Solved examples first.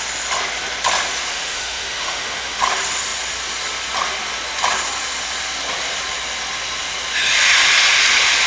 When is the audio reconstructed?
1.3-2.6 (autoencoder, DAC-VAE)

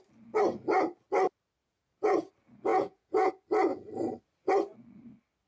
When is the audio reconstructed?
1.6-2.3 (vocoder, Vocos); 2.7-3.3

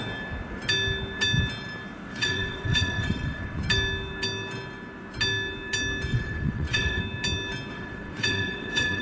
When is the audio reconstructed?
2.1-3.6 (vocoder, WaveNeXt); 6.1-7.0; 7.7-9.0

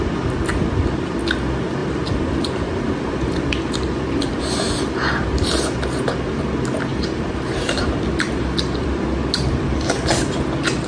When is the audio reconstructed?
1.8-5.5 (vocoder, BigVGAN v2); 6.9-9.2

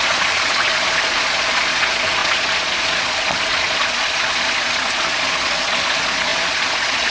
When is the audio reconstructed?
0.0-7.1 (vocoder, Vocos)

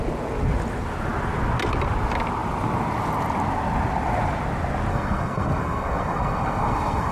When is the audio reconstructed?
4.9-7.1 (codec, SNAC)